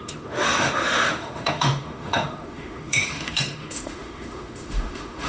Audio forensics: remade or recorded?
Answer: remade